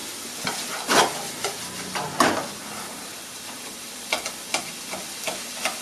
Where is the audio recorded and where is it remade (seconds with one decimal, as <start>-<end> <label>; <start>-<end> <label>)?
0.0-5.8 recorded